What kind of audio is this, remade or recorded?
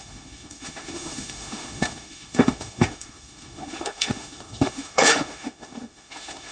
remade